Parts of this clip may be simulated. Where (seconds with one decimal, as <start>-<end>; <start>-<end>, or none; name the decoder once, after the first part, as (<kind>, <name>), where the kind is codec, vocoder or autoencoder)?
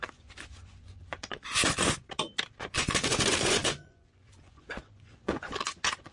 0.0-2.0 (vocoder, Vocos); 2.6-6.1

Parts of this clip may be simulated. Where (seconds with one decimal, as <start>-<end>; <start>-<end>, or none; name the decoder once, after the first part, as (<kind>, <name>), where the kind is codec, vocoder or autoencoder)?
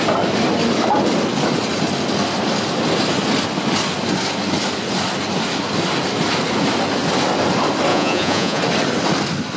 7.9-8.6 (vocoder, Vocos)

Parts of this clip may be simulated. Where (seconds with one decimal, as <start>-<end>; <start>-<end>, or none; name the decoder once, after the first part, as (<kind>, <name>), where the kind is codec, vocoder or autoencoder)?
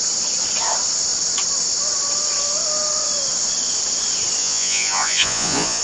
4.4-5.8 (vocoder, Vocos)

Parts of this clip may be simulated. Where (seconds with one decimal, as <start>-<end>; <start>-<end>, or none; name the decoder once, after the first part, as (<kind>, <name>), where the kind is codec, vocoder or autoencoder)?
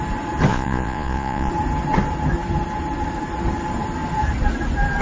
0.5-1.5 (vocoder, Vocos)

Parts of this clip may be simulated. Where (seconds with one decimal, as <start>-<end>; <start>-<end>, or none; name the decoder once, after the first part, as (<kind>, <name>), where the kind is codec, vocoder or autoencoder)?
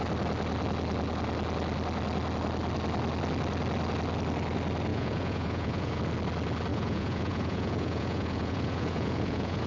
4.9-6.0 (vocoder, Vocos); 6.7-9.7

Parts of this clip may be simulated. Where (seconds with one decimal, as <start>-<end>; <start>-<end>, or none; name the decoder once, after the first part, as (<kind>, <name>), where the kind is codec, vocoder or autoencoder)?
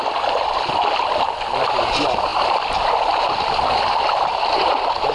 none